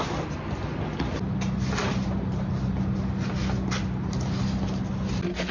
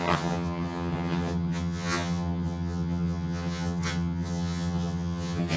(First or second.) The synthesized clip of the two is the second